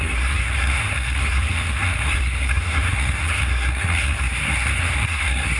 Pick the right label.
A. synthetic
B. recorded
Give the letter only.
A